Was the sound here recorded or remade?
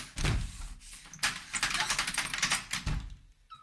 recorded